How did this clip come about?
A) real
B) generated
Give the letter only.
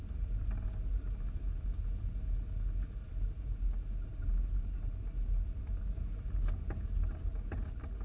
A